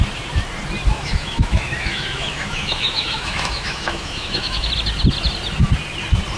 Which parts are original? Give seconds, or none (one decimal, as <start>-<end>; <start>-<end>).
0.0-0.9; 4.7-6.4